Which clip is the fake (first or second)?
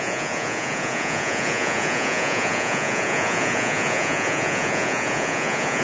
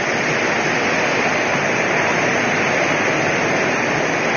first